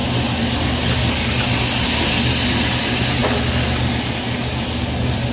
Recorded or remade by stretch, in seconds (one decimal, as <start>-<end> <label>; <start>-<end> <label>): 0.0-5.3 recorded